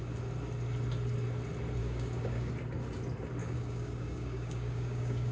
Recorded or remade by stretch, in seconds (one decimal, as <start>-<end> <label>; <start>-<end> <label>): 0.0-1.8 recorded; 1.8-2.5 remade; 2.5-3.4 recorded; 3.4-5.3 remade